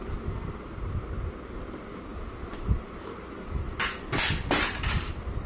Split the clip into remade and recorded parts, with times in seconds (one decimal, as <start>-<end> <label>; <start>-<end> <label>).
0.0-2.1 recorded; 2.1-5.5 remade